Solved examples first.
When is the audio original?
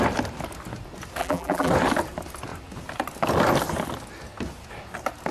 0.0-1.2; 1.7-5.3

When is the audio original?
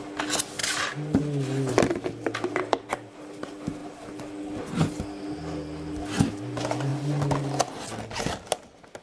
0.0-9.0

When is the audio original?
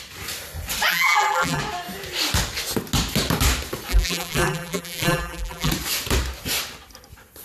0.0-0.9; 1.6-3.9; 5.7-7.4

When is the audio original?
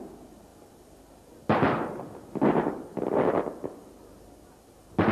0.0-5.1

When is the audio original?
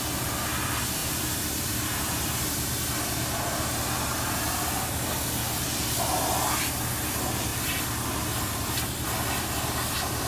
0.0-1.0; 5.1-10.3